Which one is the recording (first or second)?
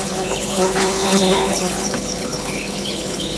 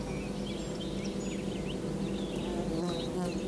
second